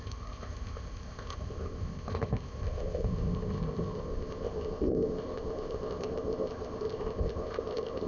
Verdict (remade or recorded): remade